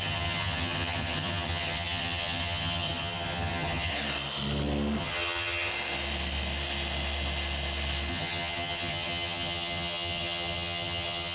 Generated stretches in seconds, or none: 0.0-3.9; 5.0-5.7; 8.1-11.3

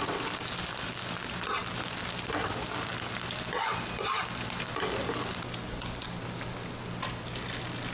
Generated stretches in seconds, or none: none

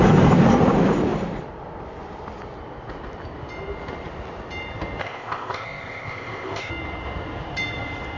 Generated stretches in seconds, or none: 5.0-6.7